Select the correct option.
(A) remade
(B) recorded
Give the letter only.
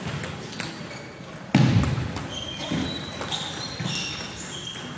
B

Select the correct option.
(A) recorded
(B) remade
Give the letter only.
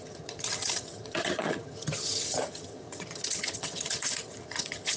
B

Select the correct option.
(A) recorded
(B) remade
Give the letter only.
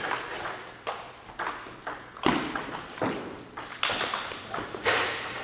A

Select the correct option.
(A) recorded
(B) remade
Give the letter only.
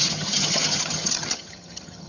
B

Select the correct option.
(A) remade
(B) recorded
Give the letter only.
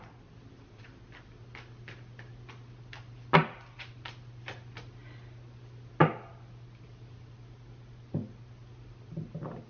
B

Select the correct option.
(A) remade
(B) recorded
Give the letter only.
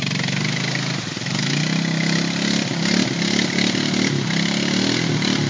B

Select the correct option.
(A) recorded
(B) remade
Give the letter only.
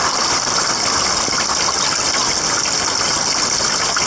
A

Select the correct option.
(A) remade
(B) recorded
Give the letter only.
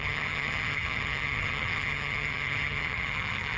A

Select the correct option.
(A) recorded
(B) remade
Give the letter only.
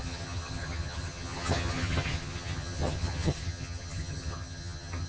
B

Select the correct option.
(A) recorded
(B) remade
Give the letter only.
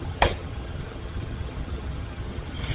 B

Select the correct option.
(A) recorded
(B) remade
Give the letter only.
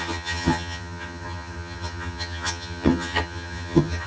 B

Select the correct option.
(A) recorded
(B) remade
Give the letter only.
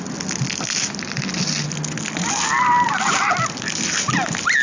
A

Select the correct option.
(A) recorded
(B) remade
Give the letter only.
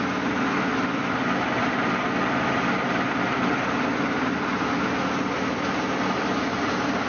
A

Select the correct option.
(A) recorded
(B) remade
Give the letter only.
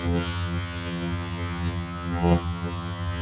B